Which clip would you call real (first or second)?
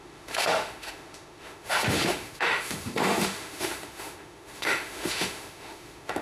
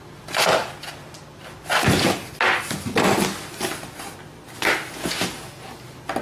second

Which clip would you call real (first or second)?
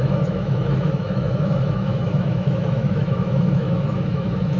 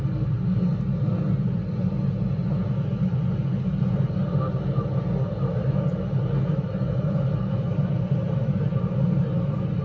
second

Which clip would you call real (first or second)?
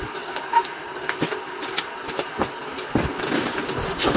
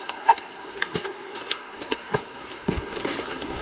first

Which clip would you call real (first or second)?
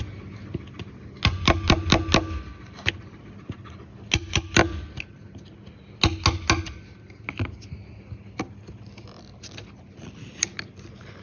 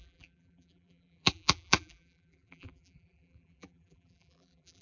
first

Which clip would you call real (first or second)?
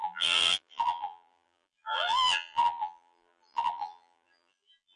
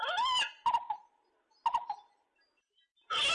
second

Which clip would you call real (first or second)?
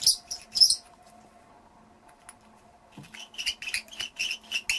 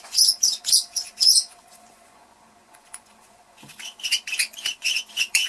first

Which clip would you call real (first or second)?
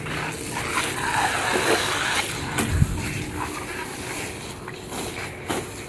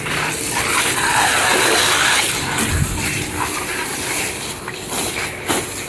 first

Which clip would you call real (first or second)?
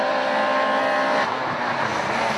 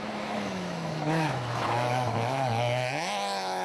first